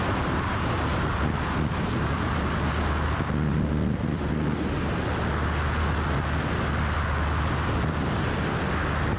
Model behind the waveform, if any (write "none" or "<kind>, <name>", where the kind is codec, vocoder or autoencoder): none